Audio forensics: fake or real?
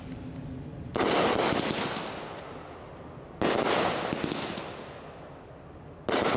real